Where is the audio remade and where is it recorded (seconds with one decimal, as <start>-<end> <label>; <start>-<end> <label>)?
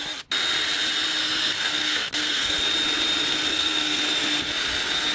0.0-1.2 recorded; 1.2-2.6 remade; 2.6-3.5 recorded; 3.5-4.0 remade; 4.0-5.1 recorded